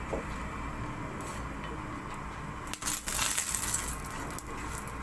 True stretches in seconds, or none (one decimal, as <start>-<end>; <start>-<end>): 0.0-5.0